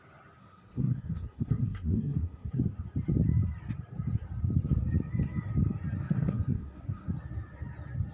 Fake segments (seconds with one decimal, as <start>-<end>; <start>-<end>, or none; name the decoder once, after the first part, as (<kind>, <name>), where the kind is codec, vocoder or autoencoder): 0.4-2.6 (codec, SNAC); 6.0-7.1